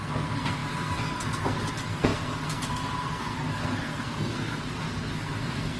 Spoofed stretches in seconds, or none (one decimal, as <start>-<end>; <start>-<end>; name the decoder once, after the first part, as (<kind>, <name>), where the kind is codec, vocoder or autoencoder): 0.0-5.8 (codec, SNAC)